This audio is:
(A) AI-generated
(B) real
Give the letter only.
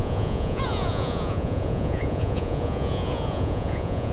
A